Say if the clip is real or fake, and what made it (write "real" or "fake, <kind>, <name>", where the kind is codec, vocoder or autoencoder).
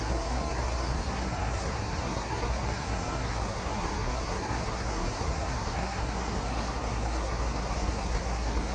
fake, codec, SNAC